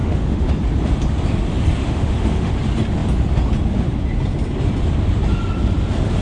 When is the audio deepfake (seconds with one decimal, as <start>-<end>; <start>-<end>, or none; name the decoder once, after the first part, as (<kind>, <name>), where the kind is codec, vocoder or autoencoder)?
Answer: 0.0-0.5 (autoencoder, DAC-VAE); 1.8-2.5